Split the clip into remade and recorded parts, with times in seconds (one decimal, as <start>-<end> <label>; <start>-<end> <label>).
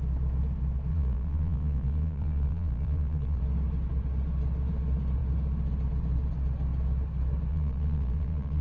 0.0-0.9 recorded; 0.9-3.4 remade; 3.4-7.5 recorded; 7.5-8.6 remade